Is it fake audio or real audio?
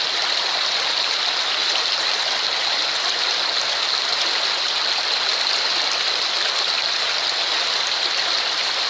real